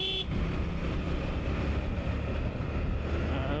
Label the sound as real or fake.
real